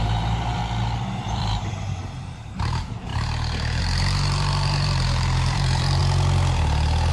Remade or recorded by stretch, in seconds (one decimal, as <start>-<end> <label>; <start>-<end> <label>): 0.0-0.6 remade; 0.6-1.1 recorded; 1.1-6.0 remade; 6.0-7.1 recorded